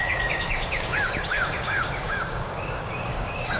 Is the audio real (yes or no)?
no